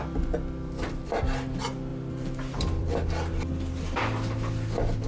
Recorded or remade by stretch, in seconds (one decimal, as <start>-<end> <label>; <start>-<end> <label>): 0.0-1.9 recorded; 1.9-4.0 remade; 4.0-5.1 recorded